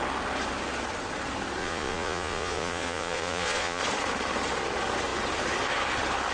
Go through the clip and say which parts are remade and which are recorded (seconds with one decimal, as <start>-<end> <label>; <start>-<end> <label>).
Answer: 0.0-1.6 recorded; 1.6-3.8 remade; 3.8-6.3 recorded